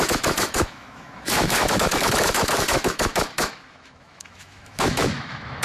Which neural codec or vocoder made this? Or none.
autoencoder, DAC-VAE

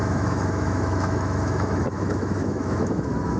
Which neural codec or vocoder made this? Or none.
autoencoder, DAC-VAE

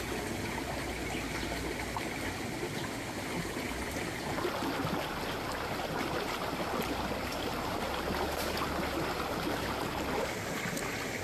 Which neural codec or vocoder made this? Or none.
none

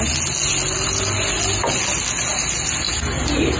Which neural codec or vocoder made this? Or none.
none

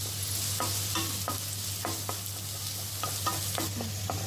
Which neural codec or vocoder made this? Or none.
none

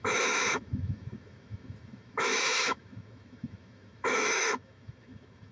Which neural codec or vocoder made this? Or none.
autoencoder, DAC-VAE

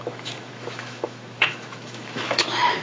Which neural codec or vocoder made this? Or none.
autoencoder, DAC-VAE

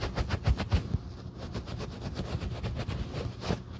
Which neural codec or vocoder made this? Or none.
none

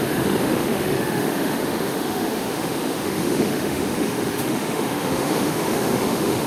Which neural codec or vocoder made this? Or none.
autoencoder, DAC-VAE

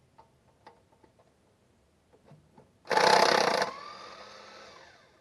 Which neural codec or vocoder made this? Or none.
none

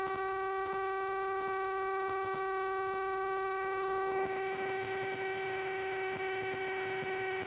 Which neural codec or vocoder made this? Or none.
autoencoder, DAC-VAE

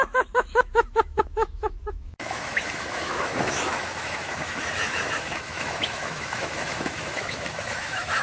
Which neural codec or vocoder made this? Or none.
autoencoder, DAC-VAE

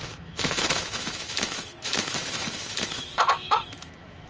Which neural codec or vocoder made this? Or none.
autoencoder, DAC-VAE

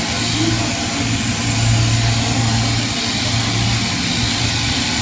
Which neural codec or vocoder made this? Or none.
none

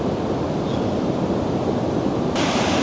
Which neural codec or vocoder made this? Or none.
none